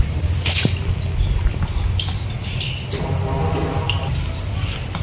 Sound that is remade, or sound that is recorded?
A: recorded